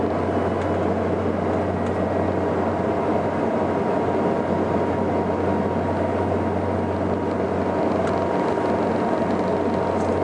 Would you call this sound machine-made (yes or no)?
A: no